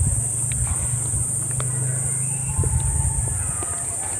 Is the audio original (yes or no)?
yes